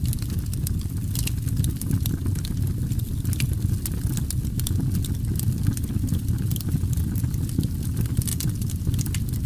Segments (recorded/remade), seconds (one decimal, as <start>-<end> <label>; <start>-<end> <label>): 0.0-9.5 recorded